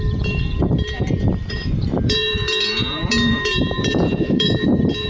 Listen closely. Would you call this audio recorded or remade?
remade